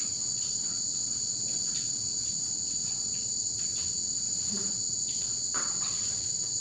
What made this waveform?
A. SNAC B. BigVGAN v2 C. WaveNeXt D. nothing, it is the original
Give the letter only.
C